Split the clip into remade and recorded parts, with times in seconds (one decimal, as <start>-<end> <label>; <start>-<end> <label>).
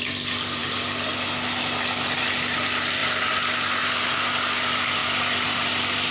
0.0-6.1 recorded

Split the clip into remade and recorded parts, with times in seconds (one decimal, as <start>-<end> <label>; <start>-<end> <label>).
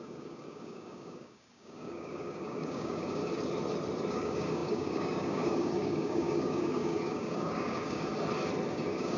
0.0-3.2 remade; 3.2-4.1 recorded; 4.1-8.1 remade; 8.1-8.7 recorded; 8.7-9.2 remade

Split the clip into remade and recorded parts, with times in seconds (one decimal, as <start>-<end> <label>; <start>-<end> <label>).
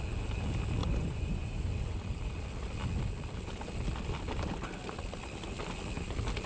0.0-0.8 recorded; 0.8-1.7 remade; 1.7-6.5 recorded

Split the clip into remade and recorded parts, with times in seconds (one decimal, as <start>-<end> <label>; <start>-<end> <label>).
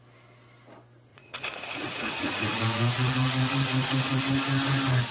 0.0-1.1 recorded; 1.1-4.2 remade; 4.2-5.1 recorded